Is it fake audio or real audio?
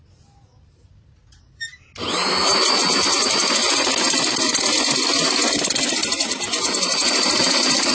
fake